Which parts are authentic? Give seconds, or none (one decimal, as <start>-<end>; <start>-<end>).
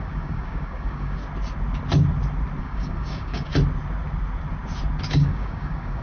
1.2-2.6; 3.5-5.0